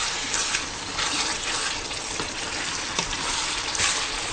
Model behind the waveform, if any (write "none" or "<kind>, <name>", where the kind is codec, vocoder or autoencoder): vocoder, BigVGAN v2